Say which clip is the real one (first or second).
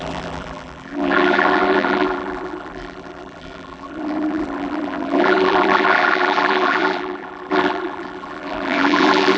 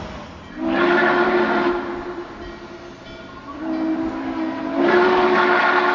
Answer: second